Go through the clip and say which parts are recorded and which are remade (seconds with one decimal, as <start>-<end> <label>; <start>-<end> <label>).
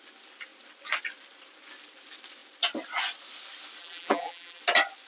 0.0-3.8 recorded; 3.8-4.6 remade; 4.6-5.1 recorded